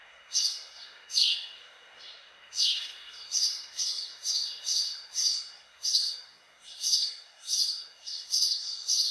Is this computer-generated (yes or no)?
yes